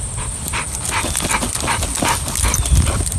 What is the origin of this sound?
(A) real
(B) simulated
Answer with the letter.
A